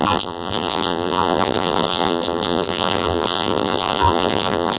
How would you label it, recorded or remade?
remade